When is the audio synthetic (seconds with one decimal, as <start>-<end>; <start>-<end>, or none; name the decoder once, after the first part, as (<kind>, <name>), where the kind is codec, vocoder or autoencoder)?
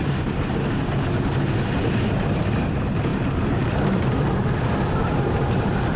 3.1-6.0 (vocoder, BigVGAN v2)